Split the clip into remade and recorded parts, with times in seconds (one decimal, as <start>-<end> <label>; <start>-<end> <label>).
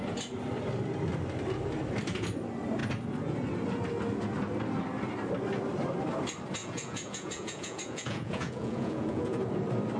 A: 0.0-6.6 recorded; 6.6-9.4 remade; 9.4-10.0 recorded